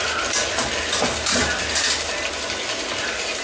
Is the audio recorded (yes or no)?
yes